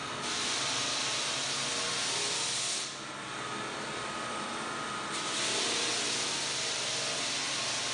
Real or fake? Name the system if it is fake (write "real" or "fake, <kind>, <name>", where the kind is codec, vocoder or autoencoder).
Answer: real